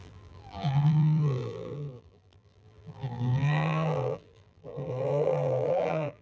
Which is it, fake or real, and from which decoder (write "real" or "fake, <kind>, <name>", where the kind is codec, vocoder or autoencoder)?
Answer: fake, vocoder, BigVGAN v2